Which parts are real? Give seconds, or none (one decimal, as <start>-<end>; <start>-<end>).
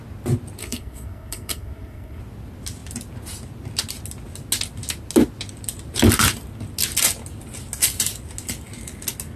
0.0-0.6; 2.2-9.4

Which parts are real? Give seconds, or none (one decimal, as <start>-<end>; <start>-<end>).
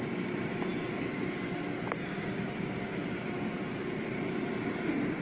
0.0-5.2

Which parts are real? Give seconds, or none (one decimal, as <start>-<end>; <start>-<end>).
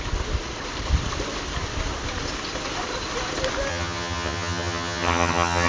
0.0-3.7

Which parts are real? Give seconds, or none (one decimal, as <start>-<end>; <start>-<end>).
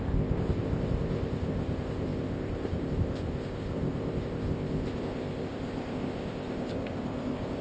none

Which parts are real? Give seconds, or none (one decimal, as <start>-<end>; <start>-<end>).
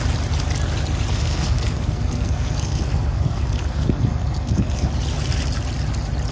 0.0-1.1; 4.9-6.3